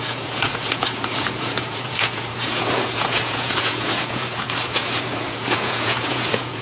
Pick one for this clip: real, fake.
fake